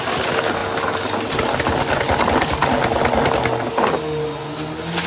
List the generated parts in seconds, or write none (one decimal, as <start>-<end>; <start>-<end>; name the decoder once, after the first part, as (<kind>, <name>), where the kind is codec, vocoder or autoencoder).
none